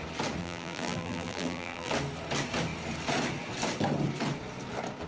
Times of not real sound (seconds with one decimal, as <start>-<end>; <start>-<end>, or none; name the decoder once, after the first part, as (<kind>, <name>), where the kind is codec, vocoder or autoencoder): 0.4-1.9 (vocoder, BigVGAN v2)